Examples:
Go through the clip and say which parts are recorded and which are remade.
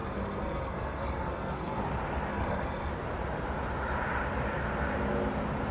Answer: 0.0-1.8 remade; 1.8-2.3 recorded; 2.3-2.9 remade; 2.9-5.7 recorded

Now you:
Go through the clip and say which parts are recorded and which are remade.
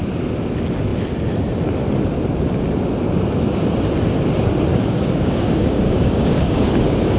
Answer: 0.0-4.7 recorded; 4.7-7.2 remade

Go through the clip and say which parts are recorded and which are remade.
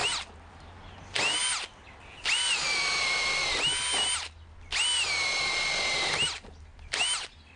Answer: 0.0-7.6 recorded